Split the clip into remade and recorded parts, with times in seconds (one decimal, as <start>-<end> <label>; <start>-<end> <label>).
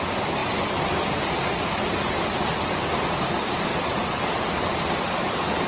0.0-5.7 recorded